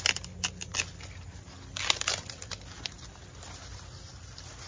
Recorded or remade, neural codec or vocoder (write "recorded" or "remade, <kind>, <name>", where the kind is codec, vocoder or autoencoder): recorded